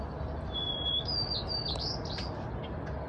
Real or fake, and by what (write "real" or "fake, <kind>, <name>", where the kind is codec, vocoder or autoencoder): real